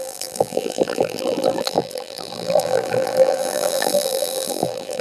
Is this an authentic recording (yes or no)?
no